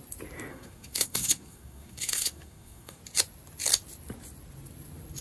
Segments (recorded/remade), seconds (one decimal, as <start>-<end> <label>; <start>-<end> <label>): 0.0-0.5 recorded; 0.5-3.0 remade; 3.0-5.2 recorded